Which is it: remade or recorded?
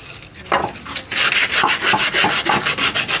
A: recorded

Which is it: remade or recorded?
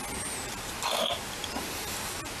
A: recorded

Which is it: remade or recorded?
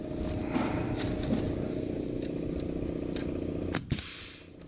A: recorded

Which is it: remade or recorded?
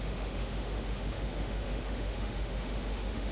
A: remade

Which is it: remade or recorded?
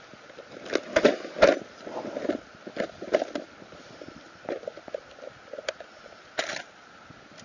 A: recorded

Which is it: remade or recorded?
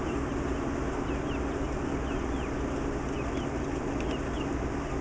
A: recorded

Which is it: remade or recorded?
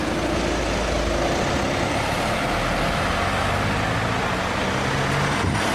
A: recorded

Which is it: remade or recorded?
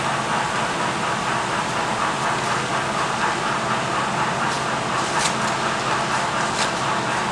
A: recorded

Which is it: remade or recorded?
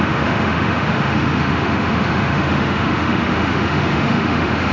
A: remade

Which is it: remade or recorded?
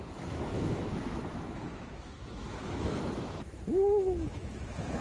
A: remade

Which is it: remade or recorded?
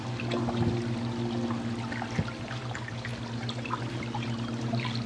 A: recorded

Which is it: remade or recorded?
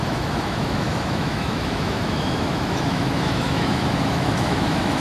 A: remade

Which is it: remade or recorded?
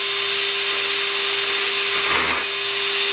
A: recorded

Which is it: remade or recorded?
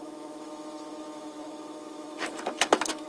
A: remade